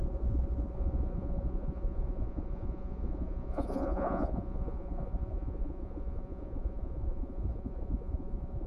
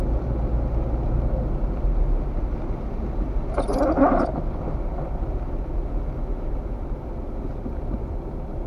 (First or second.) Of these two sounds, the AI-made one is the first